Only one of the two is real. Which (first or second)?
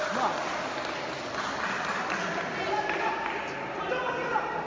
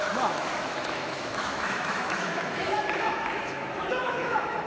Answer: first